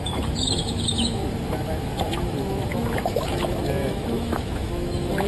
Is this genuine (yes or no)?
no